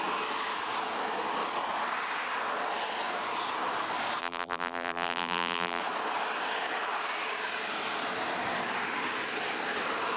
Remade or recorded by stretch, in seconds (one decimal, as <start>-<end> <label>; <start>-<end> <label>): 0.0-4.2 recorded; 4.2-5.8 remade; 5.8-10.2 recorded